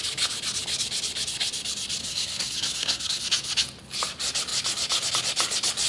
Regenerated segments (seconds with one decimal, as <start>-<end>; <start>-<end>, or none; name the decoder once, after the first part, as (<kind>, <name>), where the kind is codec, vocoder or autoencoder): 2.0-3.2 (codec, SNAC)